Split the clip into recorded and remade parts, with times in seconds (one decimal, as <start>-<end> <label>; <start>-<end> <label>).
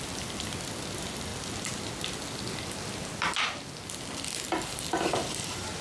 0.0-1.3 remade; 1.3-4.8 recorded; 4.8-5.8 remade